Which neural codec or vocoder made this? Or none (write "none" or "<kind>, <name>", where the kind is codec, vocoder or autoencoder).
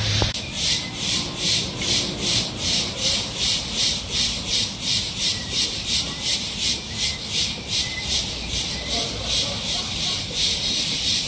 vocoder, BigVGAN v2